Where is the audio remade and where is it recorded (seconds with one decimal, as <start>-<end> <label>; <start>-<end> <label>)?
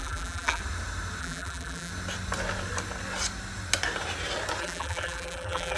0.0-0.6 remade; 0.6-1.2 recorded; 1.2-1.9 remade; 1.9-4.6 recorded; 4.6-5.8 remade